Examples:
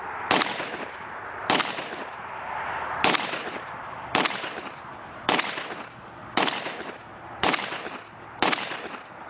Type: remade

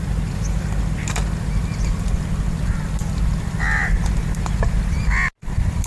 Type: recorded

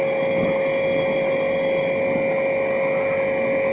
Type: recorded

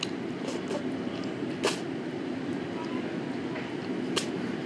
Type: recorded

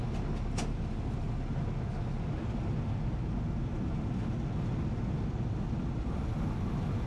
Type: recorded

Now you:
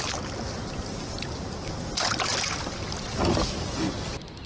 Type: recorded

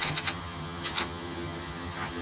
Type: remade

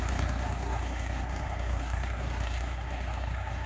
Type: remade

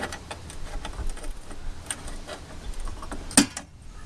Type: recorded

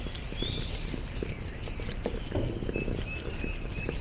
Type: recorded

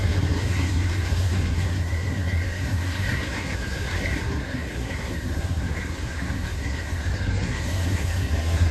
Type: remade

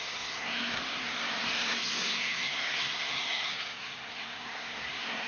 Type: remade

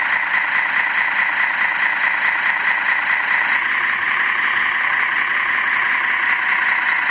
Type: recorded